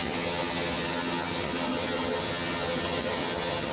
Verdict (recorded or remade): remade